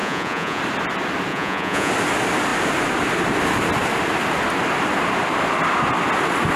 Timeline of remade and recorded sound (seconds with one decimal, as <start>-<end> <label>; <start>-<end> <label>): 0.0-0.6 remade; 0.6-1.3 recorded; 1.3-1.9 remade; 1.9-6.6 recorded